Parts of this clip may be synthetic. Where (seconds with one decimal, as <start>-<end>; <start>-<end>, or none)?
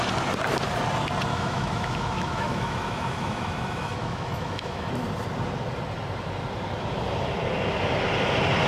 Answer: 1.3-4.9